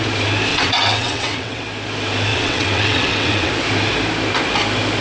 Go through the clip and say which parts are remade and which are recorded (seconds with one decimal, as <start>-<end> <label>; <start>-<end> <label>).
0.0-0.5 recorded; 0.5-1.6 remade; 1.6-2.3 recorded; 2.3-3.5 remade; 3.5-5.0 recorded